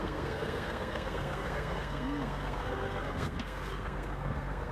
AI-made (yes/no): yes